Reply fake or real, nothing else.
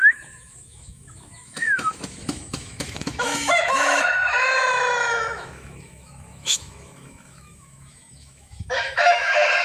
fake